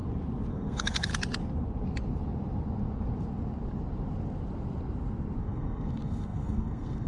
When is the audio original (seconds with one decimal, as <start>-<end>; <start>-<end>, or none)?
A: 0.0-0.5; 1.1-5.4